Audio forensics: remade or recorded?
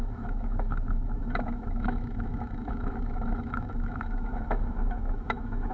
remade